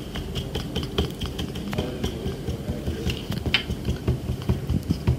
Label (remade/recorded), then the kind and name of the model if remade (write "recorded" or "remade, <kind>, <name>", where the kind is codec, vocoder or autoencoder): recorded